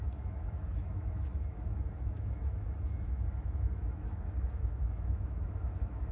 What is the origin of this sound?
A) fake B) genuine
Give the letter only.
A